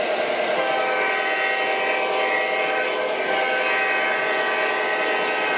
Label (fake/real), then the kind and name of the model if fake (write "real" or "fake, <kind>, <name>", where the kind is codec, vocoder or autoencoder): real